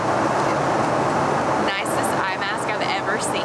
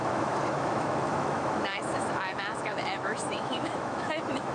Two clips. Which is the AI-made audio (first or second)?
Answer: second